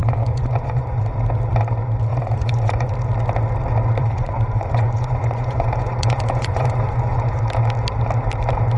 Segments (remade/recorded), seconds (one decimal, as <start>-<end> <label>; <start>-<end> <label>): 0.0-1.0 remade; 1.0-2.1 recorded; 2.1-2.9 remade; 2.9-4.0 recorded; 4.0-7.4 remade; 7.4-8.8 recorded